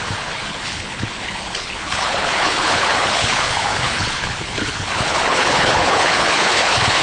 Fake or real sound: fake